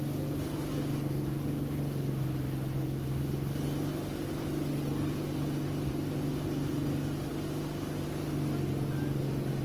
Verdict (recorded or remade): recorded